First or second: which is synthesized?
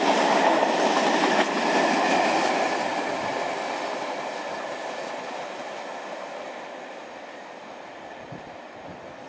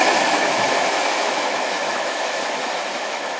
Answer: second